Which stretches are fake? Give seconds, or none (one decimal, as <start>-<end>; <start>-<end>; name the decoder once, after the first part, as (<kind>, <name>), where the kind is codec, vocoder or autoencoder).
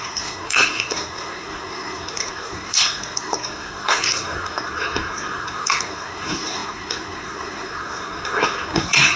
0.0-9.2 (codec, SNAC)